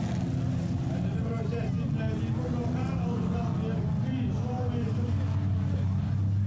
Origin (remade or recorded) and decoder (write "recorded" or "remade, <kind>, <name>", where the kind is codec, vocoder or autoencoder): recorded